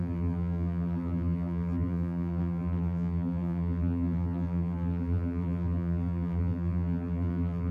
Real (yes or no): no